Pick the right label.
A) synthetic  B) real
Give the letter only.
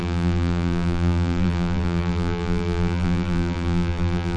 A